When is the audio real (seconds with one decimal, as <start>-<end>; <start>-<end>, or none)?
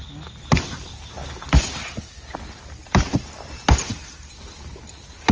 0.0-5.3